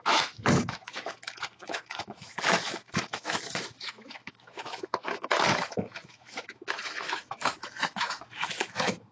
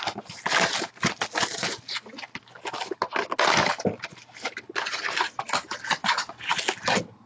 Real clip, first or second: second